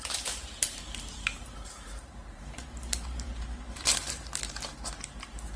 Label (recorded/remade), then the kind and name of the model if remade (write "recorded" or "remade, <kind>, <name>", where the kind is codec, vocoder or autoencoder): remade, vocoder, BigVGAN v2